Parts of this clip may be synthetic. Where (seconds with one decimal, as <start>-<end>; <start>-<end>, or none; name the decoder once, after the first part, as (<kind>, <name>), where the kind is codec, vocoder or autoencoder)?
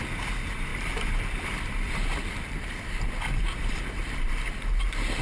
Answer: 0.7-3.8 (vocoder, BigVGAN v2)